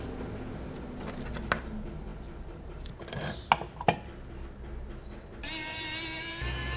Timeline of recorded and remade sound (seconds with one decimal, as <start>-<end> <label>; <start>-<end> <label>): 0.0-6.8 recorded